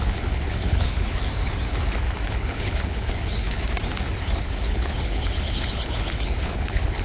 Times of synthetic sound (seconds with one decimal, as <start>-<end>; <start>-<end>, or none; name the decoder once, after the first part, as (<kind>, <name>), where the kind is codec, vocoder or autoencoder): 0.0-1.3 (codec, HILCodec); 2.3-3.6; 4.4-7.0